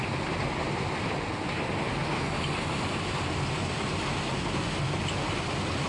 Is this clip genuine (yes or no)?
yes